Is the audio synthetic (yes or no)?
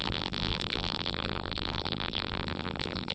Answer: yes